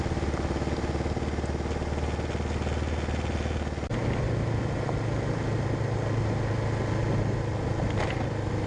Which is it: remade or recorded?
recorded